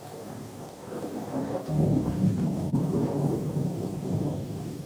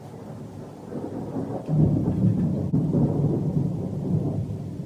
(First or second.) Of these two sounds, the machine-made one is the first